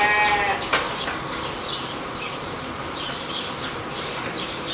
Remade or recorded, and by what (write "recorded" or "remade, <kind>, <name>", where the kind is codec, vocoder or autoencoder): remade, vocoder, BigVGAN v2